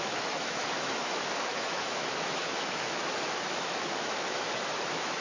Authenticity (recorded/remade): remade